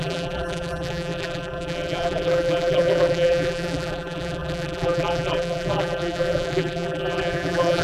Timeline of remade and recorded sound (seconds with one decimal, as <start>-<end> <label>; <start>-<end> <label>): 0.0-7.8 remade